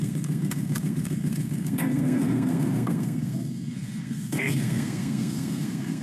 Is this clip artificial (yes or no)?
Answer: yes